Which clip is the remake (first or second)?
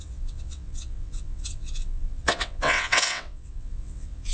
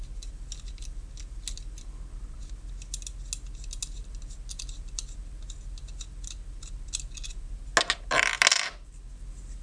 first